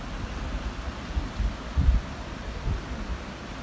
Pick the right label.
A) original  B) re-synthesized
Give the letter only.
A